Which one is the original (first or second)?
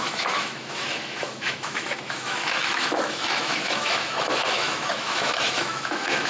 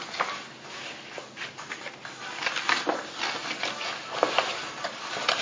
second